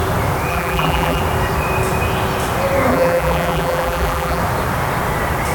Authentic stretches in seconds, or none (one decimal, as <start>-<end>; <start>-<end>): 0.0-0.5; 1.2-2.9; 4.4-5.5